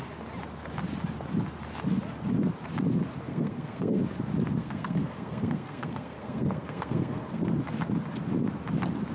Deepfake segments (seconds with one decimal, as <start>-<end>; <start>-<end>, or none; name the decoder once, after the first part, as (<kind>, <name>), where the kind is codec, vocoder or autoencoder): 3.3-4.0 (codec, SNAC); 4.6-7.4